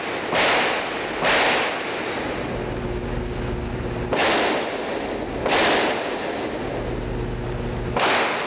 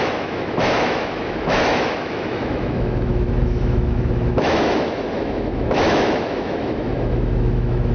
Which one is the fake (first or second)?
second